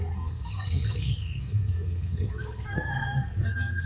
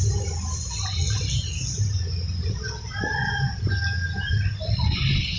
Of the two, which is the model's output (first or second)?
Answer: first